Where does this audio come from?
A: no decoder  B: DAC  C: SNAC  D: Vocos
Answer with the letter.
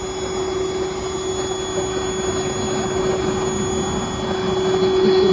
A